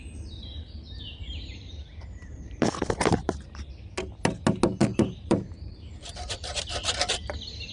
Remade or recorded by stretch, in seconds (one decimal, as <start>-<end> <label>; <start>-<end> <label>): 0.0-1.2 recorded; 1.2-3.7 remade; 3.7-4.8 recorded; 4.8-6.6 remade; 6.6-7.7 recorded